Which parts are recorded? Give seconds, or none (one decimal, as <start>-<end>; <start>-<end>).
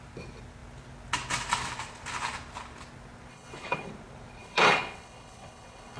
0.0-3.3; 3.9-4.4